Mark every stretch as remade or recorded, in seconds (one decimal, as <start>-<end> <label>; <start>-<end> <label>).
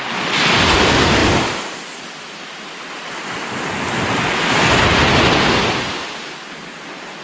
0.0-7.2 recorded